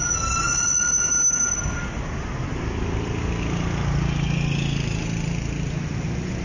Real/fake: real